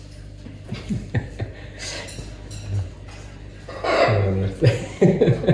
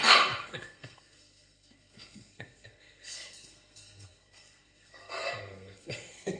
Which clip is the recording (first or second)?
first